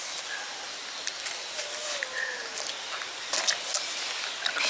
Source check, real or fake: real